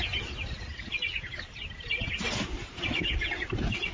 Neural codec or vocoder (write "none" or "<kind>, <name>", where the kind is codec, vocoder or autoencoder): none